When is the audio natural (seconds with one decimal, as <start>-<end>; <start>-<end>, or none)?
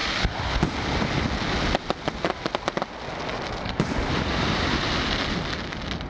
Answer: 0.0-6.1